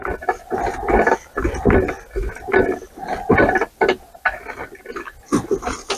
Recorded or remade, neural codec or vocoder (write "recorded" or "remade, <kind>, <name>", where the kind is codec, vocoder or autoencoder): recorded